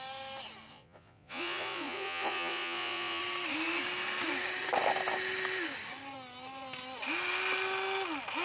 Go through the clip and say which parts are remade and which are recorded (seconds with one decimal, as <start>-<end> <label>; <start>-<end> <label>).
0.0-0.7 recorded; 0.7-3.2 remade; 3.2-8.4 recorded